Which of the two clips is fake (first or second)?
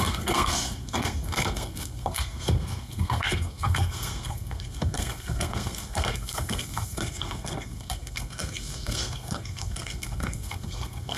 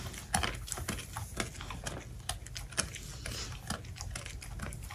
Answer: first